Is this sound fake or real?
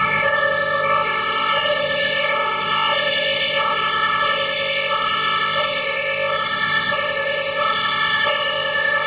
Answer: fake